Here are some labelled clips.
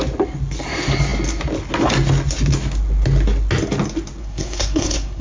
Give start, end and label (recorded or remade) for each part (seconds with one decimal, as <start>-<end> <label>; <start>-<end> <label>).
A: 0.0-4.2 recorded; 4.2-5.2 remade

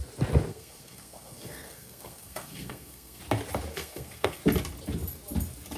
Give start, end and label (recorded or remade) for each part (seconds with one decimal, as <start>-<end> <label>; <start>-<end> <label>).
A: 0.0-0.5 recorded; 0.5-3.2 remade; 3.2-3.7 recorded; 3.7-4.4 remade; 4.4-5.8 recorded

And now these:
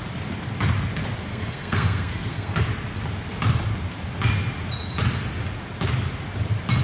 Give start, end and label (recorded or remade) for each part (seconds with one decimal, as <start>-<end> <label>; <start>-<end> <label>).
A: 0.0-1.3 recorded; 1.3-2.6 remade; 2.6-6.8 recorded